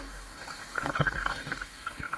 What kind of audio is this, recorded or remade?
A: remade